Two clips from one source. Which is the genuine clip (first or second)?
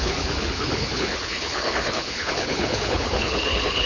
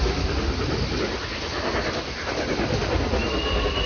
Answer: second